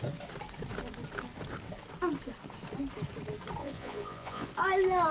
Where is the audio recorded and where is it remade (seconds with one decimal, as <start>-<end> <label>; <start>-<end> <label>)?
0.0-3.6 recorded; 3.6-4.5 remade; 4.5-5.1 recorded